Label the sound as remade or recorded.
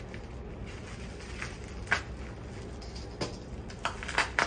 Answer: recorded